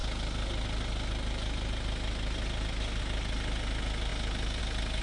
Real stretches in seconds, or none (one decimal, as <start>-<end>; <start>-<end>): 0.0-5.0